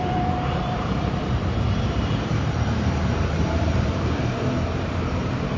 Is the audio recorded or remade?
remade